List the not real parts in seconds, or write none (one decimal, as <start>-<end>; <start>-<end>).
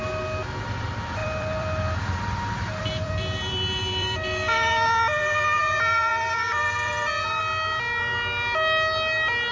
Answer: 1.2-4.7; 5.6-7.4